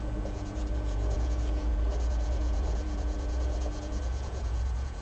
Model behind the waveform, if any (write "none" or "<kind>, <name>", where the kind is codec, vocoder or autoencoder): vocoder, Vocos